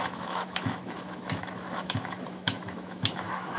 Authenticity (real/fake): fake